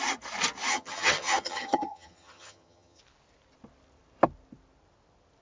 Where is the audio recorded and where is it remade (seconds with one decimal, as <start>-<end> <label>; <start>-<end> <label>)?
0.0-0.7 recorded; 0.7-3.0 remade; 3.0-5.4 recorded